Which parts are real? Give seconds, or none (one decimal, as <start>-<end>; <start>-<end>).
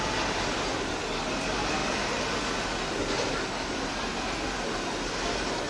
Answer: 0.0-5.7